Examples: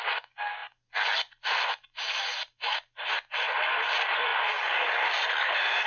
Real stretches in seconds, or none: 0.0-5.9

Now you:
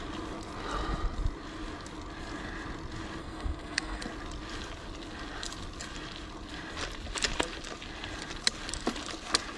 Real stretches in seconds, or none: 0.0-3.2; 4.0-9.6

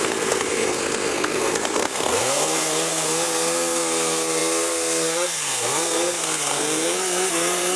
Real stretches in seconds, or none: none

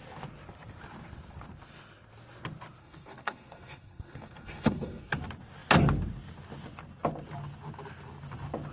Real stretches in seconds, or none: 0.0-2.8; 5.1-8.7

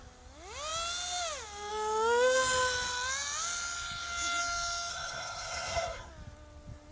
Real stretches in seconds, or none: 0.0-4.9; 6.1-6.9

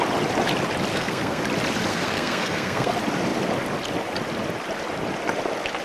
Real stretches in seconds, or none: 0.0-0.9; 1.4-1.9; 2.9-5.8

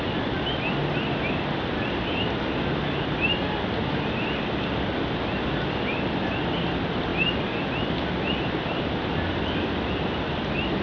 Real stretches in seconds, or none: 0.0-10.8